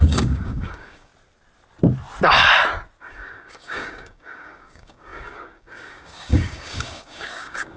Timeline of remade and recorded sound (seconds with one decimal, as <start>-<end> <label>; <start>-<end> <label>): 0.0-1.1 remade; 1.1-3.0 recorded; 3.0-7.8 remade